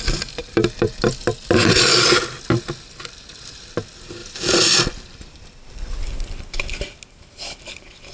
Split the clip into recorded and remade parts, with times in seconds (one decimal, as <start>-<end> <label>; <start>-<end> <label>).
0.0-0.4 recorded; 0.4-2.1 remade; 2.1-4.2 recorded; 4.2-6.0 remade; 6.0-8.1 recorded